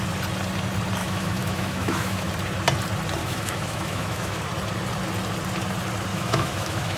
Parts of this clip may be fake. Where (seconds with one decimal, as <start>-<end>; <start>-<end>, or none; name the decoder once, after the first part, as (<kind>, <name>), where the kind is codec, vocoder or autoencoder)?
1.0-2.3 (autoencoder, DAC-VAE); 3.2-4.4; 6.1-7.0